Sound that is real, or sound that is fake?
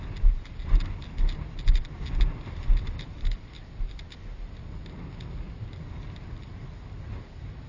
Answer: real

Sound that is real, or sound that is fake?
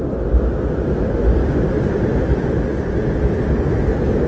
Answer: real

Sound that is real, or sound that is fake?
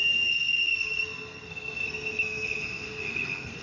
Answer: fake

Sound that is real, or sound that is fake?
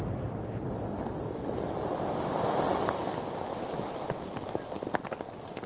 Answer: real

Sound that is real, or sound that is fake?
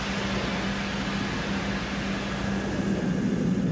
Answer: real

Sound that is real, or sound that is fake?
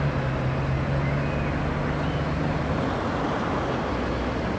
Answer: real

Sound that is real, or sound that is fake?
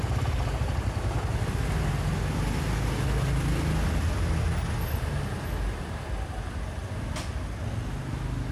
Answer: real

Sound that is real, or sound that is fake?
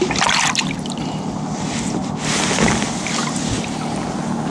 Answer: real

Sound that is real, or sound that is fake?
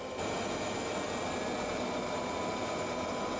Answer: real